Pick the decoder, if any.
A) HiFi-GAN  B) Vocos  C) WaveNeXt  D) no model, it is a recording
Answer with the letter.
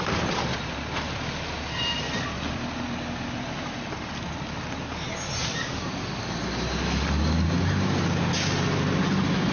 D